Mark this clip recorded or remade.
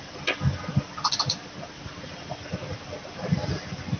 recorded